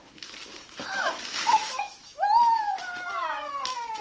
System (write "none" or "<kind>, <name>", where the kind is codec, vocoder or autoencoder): autoencoder, DAC-VAE